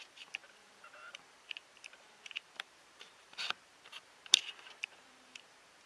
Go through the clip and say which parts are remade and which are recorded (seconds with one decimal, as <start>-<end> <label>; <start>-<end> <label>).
0.0-5.9 remade